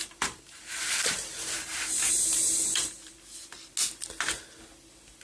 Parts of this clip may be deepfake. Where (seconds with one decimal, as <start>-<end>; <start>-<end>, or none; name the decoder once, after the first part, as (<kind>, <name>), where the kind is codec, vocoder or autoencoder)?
0.0-3.1 (vocoder, BigVGAN v2)